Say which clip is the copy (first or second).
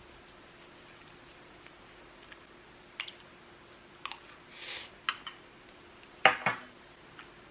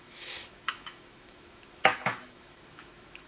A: second